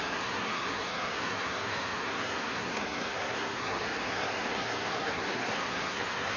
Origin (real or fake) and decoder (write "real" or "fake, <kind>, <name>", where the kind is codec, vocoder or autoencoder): fake, codec, SNAC